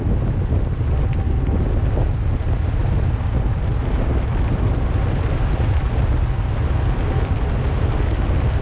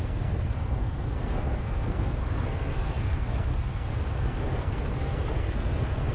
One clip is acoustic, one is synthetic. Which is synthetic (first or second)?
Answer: second